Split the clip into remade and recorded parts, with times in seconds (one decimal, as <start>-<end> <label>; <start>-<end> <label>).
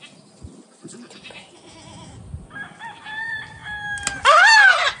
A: 0.0-5.0 recorded